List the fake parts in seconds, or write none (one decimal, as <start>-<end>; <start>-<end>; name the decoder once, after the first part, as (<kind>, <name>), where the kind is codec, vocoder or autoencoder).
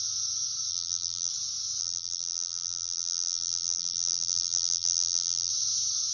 0.7-1.3 (vocoder, BigVGAN v2); 1.8-5.5